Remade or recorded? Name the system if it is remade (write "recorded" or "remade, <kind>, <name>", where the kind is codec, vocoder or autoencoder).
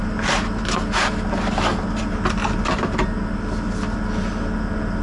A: recorded